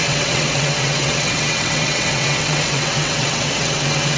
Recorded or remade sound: remade